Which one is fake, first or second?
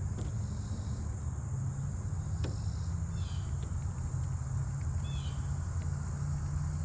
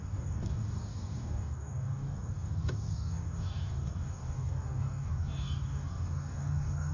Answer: second